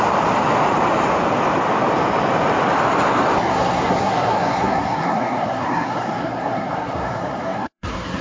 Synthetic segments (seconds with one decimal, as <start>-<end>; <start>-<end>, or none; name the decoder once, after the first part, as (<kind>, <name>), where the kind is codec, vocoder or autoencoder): 3.5-8.2 (codec, SNAC)